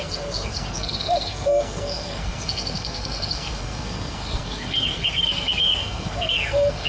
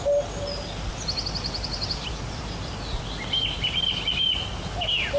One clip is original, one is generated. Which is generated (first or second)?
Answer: first